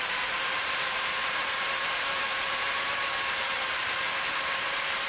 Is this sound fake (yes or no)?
yes